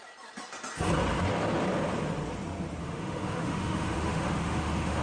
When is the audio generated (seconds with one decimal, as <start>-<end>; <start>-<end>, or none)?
2.8-5.0